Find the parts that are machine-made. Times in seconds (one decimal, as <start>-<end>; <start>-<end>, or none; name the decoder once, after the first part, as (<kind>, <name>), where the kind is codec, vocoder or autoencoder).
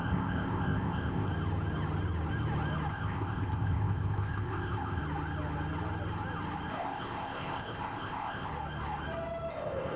0.0-1.3 (codec, ZipCodec); 2.9-5.0; 6.7-8.5; 9.5-10.0